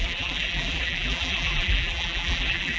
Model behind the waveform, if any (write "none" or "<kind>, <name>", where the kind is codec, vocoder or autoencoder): vocoder, BigVGAN v2